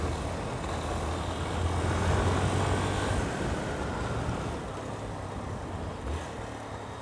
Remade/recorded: recorded